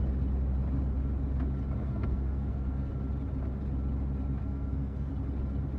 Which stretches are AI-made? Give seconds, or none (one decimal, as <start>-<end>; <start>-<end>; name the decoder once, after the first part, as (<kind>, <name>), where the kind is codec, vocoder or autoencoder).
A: 1.8-2.9 (codec, SNAC); 4.4-5.1